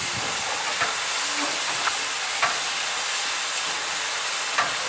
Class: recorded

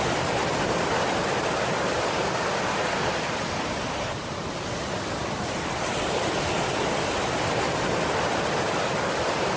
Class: remade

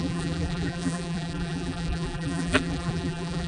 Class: remade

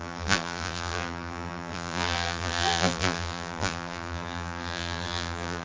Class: remade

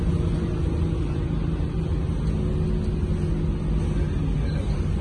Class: recorded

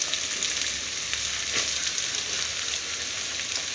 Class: recorded